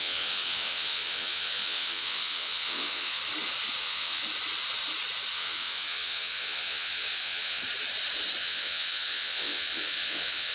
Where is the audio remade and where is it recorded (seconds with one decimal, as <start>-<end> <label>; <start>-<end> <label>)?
0.0-3.2 remade; 3.2-3.8 recorded; 3.8-4.2 remade; 4.2-5.3 recorded; 5.3-7.6 remade; 7.6-8.4 recorded; 8.4-10.5 remade